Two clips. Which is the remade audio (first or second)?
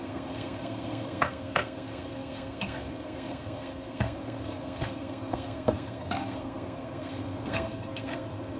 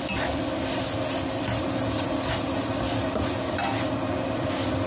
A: first